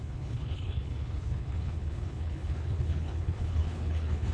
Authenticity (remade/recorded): remade